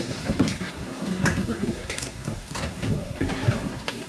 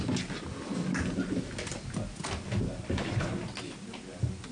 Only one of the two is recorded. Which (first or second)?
second